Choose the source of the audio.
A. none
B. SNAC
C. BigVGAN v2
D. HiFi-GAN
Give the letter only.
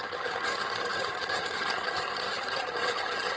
D